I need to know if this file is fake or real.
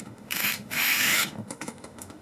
fake